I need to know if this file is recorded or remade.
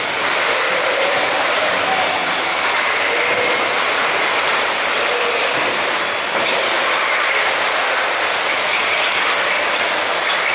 recorded